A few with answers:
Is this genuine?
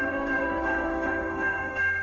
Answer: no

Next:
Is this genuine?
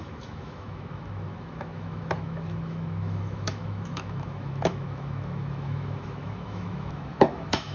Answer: no